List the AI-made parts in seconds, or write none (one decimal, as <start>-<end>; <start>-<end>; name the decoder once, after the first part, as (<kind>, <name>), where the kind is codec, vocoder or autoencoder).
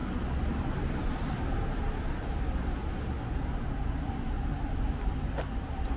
none